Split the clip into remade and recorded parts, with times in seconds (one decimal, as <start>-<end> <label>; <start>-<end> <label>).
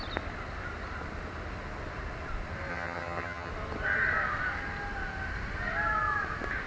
0.0-2.7 recorded; 2.7-3.5 remade; 3.5-6.7 recorded